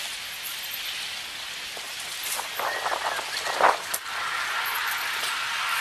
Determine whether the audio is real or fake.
fake